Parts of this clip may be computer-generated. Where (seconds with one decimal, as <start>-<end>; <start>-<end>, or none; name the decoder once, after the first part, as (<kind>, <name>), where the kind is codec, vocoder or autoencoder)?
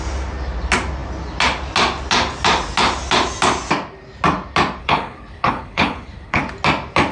4.8-6.4 (codec, HILCodec)